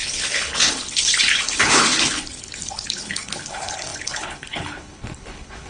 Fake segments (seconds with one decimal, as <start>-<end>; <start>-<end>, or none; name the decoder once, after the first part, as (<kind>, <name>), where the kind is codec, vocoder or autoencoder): 0.0-5.7 (codec, HILCodec)